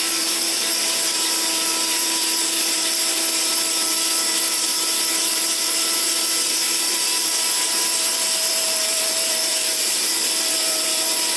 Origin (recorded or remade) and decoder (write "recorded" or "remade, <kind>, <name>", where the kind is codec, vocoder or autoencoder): remade, vocoder, BigVGAN v2